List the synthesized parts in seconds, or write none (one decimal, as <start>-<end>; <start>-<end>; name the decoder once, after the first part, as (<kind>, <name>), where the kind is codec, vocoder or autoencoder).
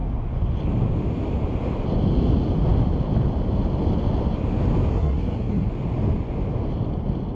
4.9-5.7 (codec, SNAC)